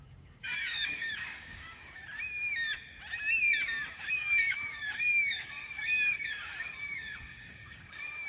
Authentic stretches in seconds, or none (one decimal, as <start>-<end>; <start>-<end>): 2.0-3.9